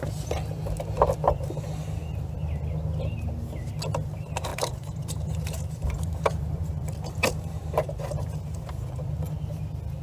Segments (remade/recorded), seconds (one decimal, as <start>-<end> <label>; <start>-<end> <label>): 0.0-4.5 recorded; 4.5-8.7 remade; 8.7-10.0 recorded